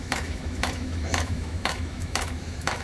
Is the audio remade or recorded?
remade